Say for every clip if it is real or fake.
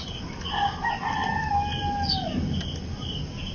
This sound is real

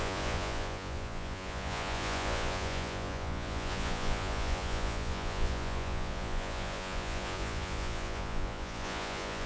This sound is fake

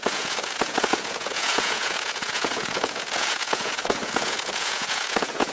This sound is fake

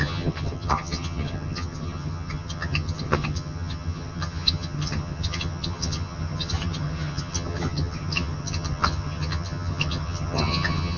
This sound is fake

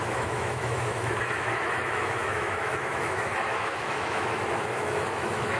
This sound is fake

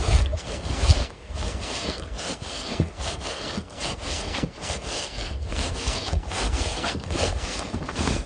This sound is fake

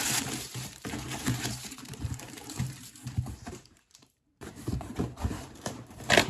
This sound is fake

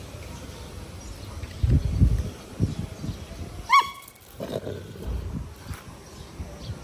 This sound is real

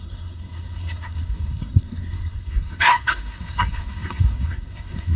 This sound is fake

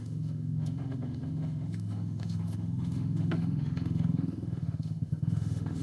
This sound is fake